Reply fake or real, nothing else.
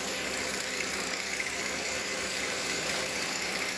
fake